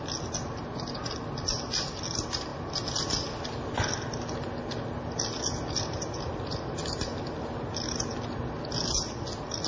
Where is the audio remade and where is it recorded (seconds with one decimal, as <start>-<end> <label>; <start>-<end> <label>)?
0.0-9.7 recorded